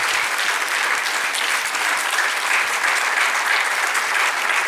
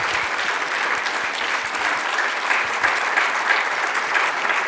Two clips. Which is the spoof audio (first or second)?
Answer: second